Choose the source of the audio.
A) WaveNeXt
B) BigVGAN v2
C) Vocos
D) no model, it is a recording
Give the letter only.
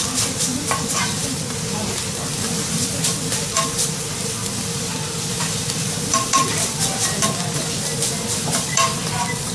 B